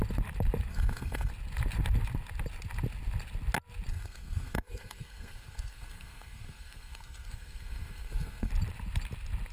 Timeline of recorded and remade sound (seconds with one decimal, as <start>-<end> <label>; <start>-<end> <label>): 0.0-0.7 recorded; 0.7-1.3 remade; 1.3-3.9 recorded; 3.9-8.5 remade; 8.5-9.5 recorded